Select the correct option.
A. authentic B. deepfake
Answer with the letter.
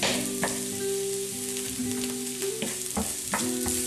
A